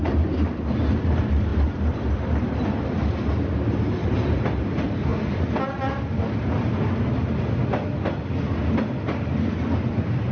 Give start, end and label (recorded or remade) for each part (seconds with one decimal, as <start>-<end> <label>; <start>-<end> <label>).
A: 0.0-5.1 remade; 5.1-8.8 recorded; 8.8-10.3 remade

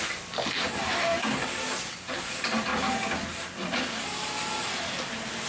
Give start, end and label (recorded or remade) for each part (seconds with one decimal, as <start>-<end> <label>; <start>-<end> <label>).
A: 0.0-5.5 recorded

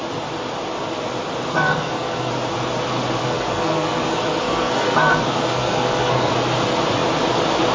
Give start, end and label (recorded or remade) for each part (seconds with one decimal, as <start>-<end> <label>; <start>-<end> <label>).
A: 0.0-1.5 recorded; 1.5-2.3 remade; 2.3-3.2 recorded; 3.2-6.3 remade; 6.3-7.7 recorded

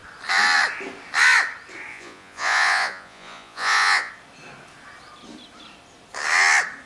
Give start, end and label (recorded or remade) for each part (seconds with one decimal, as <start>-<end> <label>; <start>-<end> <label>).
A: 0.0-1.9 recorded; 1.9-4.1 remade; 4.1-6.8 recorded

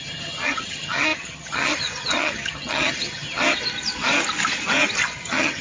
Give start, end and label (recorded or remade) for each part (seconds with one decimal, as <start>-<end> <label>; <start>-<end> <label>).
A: 0.0-3.4 remade; 3.4-5.0 recorded; 5.0-5.6 remade